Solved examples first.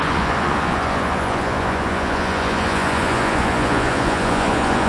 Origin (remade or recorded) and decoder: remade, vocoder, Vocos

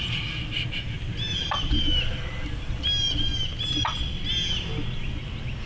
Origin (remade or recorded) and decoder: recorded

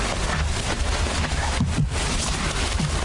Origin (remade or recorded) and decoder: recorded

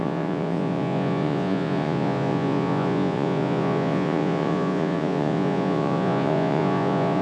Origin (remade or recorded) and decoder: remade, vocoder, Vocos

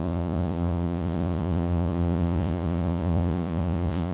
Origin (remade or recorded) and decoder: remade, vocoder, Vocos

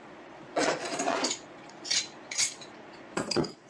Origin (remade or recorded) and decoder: remade, vocoder, Vocos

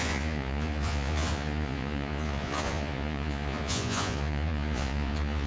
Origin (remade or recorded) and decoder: remade, vocoder, Vocos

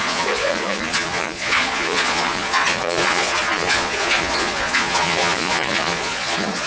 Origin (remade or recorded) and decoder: remade, vocoder, Vocos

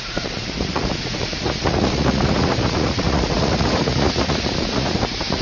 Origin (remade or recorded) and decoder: remade, vocoder, Vocos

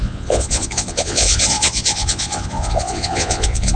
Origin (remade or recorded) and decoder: remade, vocoder, Vocos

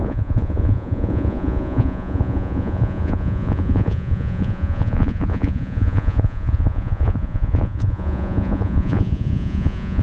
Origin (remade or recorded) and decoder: remade, vocoder, Vocos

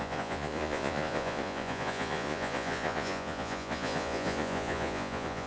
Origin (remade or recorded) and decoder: remade, vocoder, Vocos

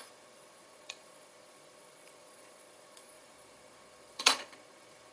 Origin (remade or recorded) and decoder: remade, vocoder, Vocos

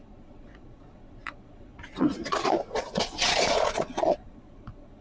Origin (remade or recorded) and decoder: remade, vocoder, Vocos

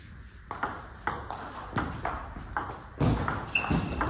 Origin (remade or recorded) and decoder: recorded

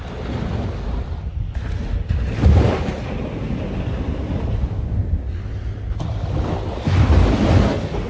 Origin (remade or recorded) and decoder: recorded